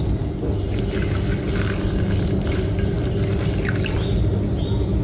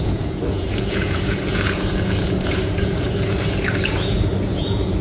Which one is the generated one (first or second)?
second